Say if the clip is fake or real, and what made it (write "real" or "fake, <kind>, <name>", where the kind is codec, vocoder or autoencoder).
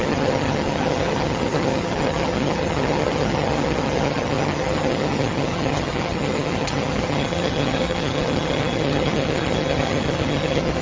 fake, vocoder, HiFi-GAN